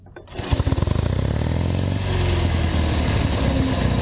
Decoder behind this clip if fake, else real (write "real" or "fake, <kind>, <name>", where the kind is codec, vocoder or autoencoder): real